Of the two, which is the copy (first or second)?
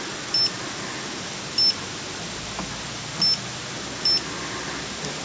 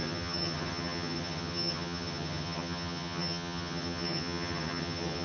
second